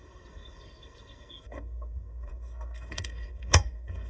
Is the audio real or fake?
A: fake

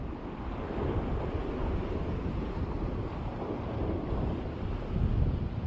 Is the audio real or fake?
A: real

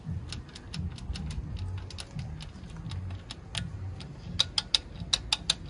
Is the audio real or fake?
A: real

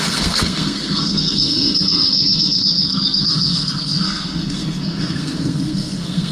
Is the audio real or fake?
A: fake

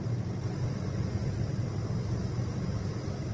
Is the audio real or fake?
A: real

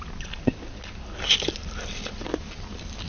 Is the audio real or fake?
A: real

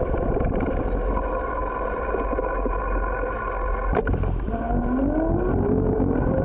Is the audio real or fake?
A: real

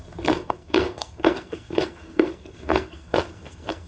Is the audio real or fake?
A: fake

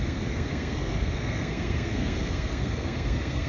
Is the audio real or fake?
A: fake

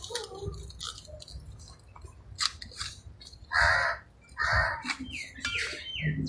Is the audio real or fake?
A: real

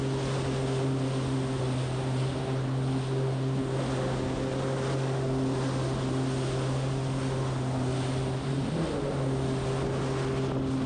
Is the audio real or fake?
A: real